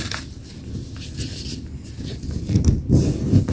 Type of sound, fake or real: real